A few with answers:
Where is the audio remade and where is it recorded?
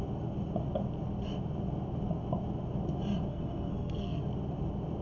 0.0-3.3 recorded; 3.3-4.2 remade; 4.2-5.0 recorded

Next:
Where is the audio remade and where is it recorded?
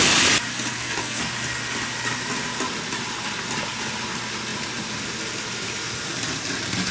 0.0-0.5 recorded; 0.5-1.2 remade; 1.2-6.9 recorded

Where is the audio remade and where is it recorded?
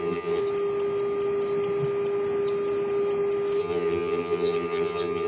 0.0-0.4 remade; 0.4-3.6 recorded; 3.6-5.3 remade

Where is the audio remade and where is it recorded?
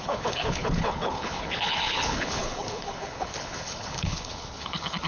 0.0-5.1 remade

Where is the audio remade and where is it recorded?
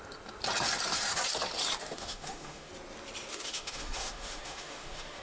0.0-1.8 recorded; 1.8-2.7 remade; 2.7-3.3 recorded; 3.3-5.2 remade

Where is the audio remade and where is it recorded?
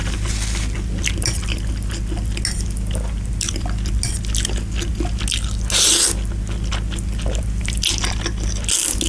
0.0-9.1 recorded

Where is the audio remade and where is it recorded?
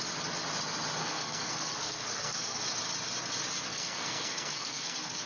0.0-1.0 recorded; 1.0-2.6 remade; 2.6-3.7 recorded; 3.7-5.3 remade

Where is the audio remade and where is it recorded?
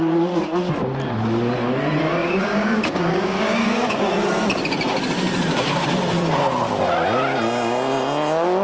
0.0-2.2 recorded; 2.2-4.1 remade; 4.1-8.6 recorded